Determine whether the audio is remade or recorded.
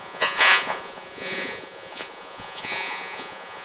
remade